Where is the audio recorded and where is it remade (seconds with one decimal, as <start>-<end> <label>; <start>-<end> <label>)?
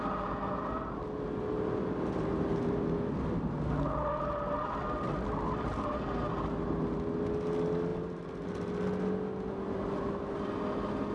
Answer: 0.0-11.1 recorded